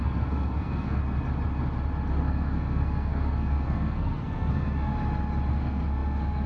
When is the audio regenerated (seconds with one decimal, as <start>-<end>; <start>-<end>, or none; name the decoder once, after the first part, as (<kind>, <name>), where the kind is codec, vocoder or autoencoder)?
0.0-1.0 (codec, SNAC); 2.1-4.9; 5.5-6.5